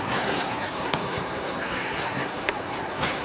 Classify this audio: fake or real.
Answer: fake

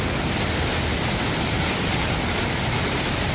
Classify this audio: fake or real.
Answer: real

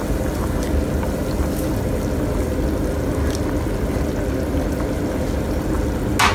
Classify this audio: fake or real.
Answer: real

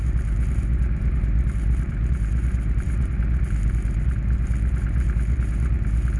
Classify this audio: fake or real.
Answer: fake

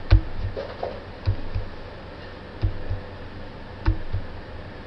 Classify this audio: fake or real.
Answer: real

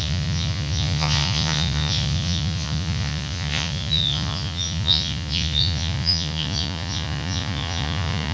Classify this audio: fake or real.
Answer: fake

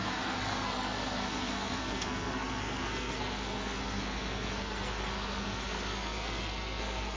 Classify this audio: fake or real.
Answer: fake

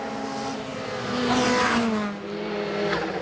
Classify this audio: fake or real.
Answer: real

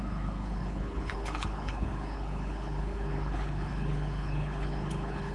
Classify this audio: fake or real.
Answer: fake